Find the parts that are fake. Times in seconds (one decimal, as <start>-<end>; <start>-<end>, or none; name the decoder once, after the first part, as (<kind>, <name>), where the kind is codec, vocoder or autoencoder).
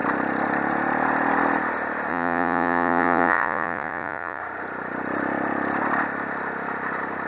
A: 2.1-4.4 (vocoder, Vocos)